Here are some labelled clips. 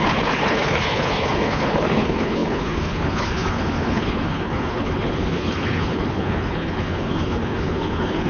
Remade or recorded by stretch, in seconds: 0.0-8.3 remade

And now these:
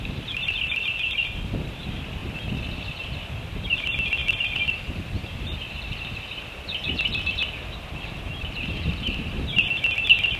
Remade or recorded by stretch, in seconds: 0.0-2.2 remade; 2.2-2.9 recorded; 2.9-4.2 remade; 4.2-6.9 recorded; 6.9-10.4 remade

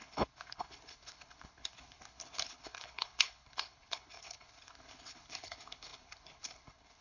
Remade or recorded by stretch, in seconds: 0.0-7.0 remade

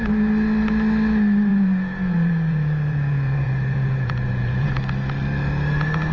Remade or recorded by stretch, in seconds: 0.0-1.5 recorded; 1.5-4.7 remade; 4.7-6.1 recorded